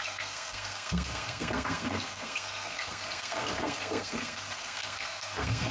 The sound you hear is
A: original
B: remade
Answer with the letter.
B